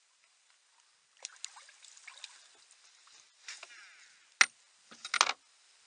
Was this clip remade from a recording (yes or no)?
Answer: no